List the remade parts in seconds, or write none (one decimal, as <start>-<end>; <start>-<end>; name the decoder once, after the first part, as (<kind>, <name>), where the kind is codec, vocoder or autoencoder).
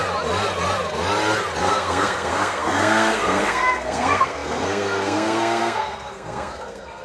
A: 1.6-7.0 (codec, SNAC)